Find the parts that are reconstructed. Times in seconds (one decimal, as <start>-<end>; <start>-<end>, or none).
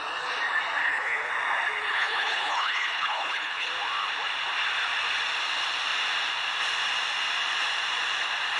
0.8-1.3; 1.9-3.7